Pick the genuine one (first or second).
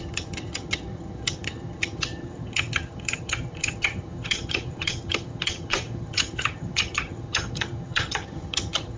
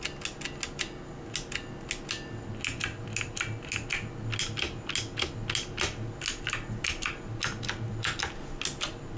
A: second